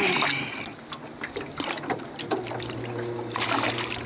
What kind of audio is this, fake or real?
real